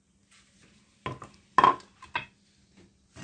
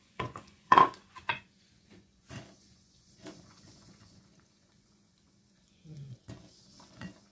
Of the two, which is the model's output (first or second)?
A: second